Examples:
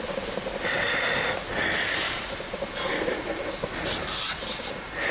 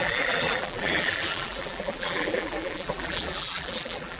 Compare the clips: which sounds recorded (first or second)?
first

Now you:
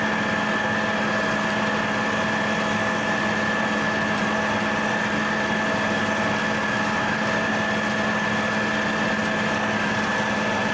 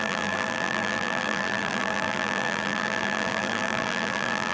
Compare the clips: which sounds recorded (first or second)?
first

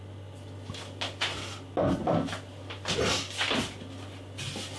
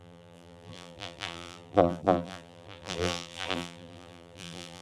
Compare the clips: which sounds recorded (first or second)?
first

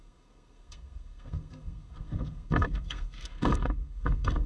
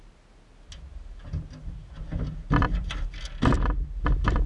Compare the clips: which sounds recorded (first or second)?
second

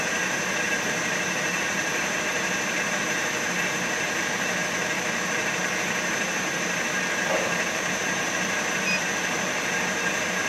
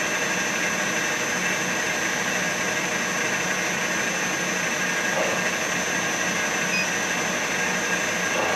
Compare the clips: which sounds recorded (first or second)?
second